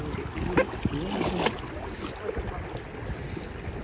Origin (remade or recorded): recorded